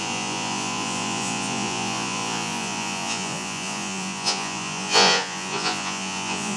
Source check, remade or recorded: remade